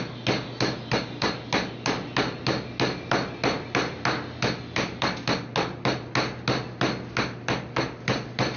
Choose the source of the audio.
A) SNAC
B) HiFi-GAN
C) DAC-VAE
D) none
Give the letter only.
D